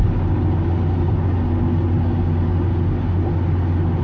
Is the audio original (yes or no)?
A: yes